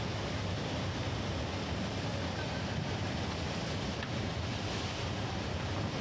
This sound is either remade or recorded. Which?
recorded